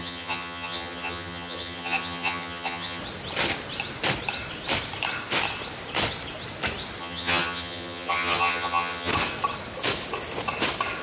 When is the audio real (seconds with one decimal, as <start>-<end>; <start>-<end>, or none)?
3.0-7.0; 9.1-11.0